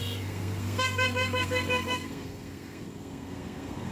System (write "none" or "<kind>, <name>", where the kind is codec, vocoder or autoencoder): codec, SNAC